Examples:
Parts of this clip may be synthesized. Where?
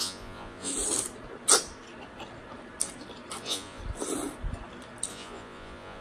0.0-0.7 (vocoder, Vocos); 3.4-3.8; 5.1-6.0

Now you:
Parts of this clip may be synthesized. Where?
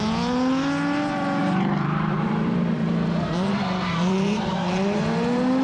1.4-4.4 (vocoder, BigVGAN v2)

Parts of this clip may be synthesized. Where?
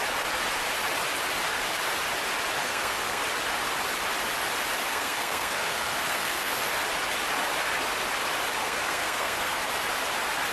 2.6-3.2 (codec, SNAC); 4.9-6.5; 8.6-9.6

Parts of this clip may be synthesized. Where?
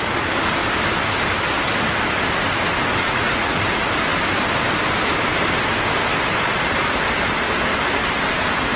3.0-3.6 (vocoder, Vocos)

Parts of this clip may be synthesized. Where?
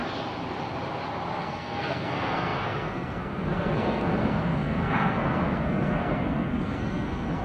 1.4-7.4 (codec, SNAC)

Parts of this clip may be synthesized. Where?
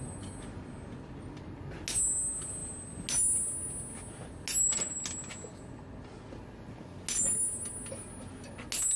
none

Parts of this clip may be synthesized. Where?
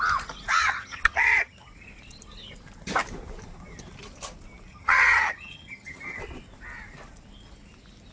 0.6-1.7 (vocoder, HiFi-GAN); 4.7-6.2